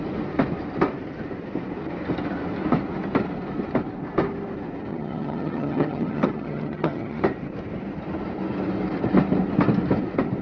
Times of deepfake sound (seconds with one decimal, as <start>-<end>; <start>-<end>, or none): 4.9-7.2